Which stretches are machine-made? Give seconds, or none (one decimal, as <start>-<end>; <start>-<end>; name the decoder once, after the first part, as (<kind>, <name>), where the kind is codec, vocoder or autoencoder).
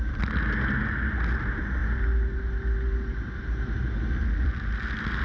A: none